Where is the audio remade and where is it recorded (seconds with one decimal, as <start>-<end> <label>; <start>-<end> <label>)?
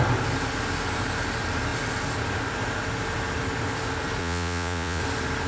0.0-4.2 recorded; 4.2-5.0 remade; 5.0-5.5 recorded